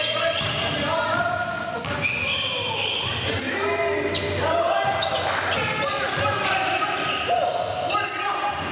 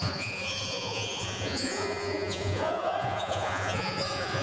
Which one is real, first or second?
first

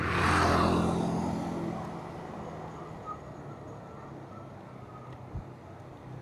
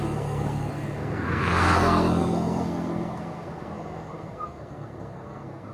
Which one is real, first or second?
first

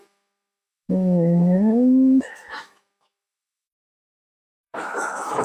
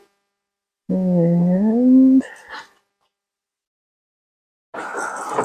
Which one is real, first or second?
second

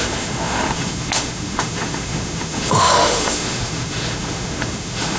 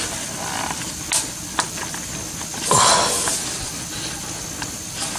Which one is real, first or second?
second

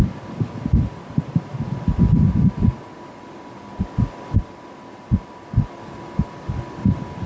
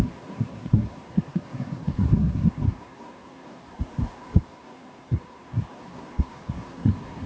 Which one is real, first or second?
first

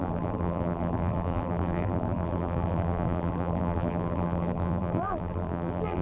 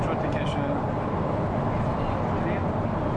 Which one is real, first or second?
second